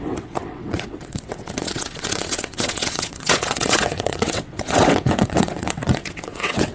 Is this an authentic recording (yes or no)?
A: no